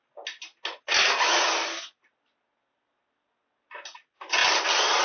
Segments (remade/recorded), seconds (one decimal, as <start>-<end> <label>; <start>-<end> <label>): 0.0-5.0 recorded